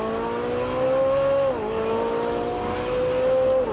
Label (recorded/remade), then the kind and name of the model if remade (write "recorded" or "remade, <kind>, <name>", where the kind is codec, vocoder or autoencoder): recorded